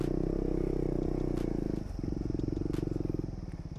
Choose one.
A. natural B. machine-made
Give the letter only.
A